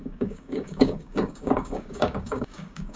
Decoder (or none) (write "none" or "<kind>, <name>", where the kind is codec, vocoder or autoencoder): codec, DAC